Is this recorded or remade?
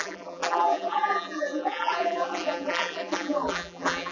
remade